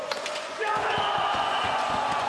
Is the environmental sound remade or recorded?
remade